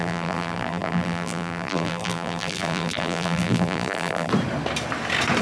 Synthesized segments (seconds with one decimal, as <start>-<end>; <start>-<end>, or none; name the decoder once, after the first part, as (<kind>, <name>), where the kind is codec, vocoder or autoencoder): 0.0-4.3 (vocoder, BigVGAN v2)

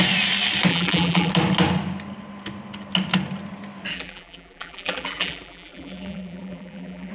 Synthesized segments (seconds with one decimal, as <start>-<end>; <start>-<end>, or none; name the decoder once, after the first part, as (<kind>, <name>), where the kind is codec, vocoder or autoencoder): 0.7-1.3 (vocoder, BigVGAN v2); 3.9-7.1